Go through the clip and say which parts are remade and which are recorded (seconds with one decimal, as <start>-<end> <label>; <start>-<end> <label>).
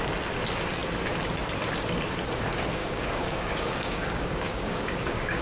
0.0-2.8 recorded; 2.8-5.4 remade